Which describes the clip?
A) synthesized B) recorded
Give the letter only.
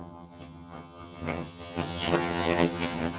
A